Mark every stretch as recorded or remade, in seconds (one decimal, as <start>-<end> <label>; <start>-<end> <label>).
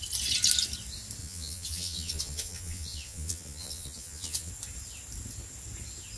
0.0-1.2 recorded; 1.2-4.5 remade; 4.5-6.2 recorded